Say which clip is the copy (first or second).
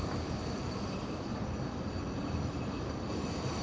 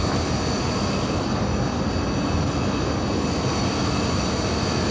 first